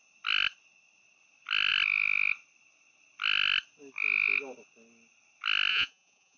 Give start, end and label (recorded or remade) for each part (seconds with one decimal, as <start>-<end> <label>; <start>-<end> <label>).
0.0-5.7 recorded; 5.7-6.4 remade